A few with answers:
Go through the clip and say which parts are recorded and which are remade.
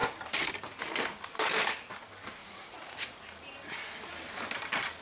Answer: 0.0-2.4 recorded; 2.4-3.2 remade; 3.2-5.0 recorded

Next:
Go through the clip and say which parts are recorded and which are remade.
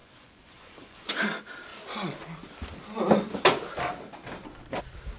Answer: 0.0-1.1 remade; 1.1-5.2 recorded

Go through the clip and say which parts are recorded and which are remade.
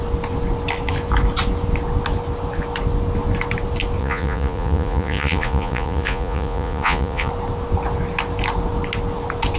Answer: 0.0-4.0 recorded; 4.0-7.3 remade; 7.3-9.6 recorded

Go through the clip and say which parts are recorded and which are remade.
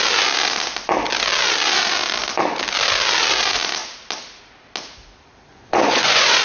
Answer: 0.0-5.5 recorded; 5.5-6.4 remade